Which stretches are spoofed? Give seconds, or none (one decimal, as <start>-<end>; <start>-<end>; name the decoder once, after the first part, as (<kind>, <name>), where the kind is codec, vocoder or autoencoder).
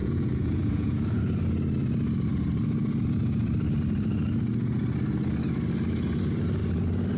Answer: 0.0-1.2 (vocoder, Vocos)